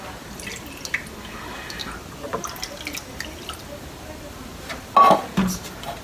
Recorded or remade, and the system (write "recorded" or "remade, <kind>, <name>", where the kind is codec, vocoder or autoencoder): recorded